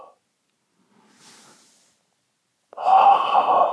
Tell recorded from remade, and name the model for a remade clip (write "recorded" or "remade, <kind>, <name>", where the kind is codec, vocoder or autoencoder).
recorded